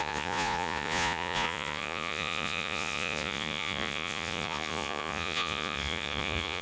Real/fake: fake